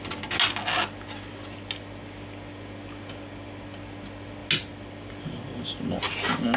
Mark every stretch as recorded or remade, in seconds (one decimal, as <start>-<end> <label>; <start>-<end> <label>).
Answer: 0.0-6.6 recorded